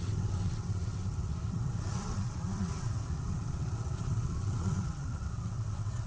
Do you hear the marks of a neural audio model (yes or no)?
yes